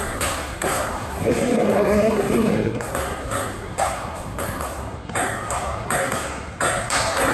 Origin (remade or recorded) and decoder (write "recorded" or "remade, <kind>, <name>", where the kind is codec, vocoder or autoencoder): remade, codec, SNAC